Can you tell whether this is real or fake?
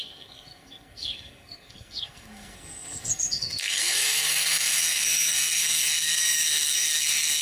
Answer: fake